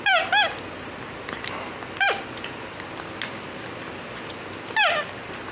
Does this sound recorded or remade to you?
recorded